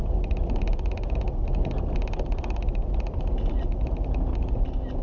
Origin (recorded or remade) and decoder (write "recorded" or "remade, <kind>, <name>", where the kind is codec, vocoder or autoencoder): recorded